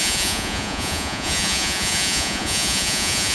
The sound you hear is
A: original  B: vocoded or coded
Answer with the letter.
B